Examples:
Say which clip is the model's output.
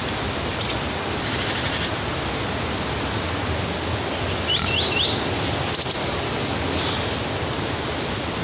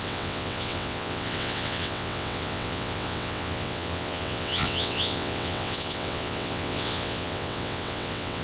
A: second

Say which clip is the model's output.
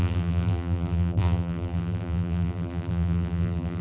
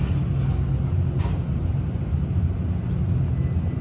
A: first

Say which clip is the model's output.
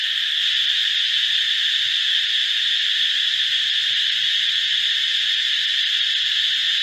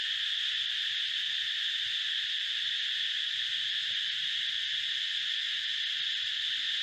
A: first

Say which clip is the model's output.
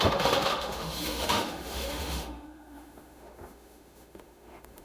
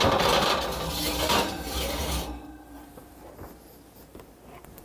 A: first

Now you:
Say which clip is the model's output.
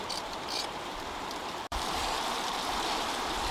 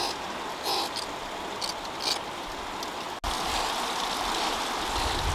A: first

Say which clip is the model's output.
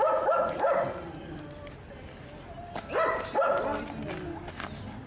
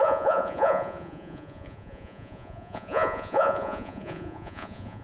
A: second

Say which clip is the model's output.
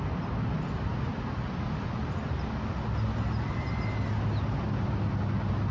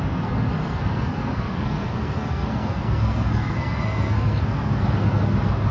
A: second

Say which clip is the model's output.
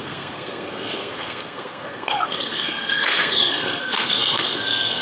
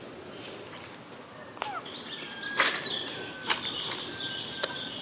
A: first